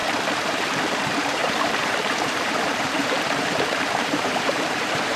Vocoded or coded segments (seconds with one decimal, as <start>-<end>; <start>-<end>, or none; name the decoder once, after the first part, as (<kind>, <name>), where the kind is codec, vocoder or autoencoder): 0.5-5.2 (vocoder, BigVGAN v2)